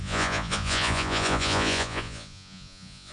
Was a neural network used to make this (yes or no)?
yes